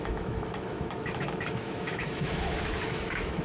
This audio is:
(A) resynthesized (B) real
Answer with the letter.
A